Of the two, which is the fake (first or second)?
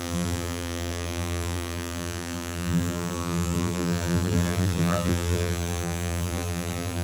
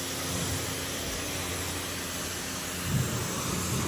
first